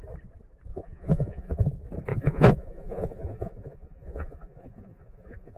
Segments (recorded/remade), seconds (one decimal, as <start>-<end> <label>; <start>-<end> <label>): 0.0-0.7 recorded; 0.7-1.7 remade; 1.7-2.1 recorded; 2.1-5.6 remade